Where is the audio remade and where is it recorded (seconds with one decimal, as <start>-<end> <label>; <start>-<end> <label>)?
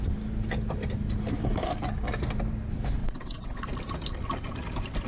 0.0-3.0 recorded; 3.0-3.7 remade; 3.7-5.1 recorded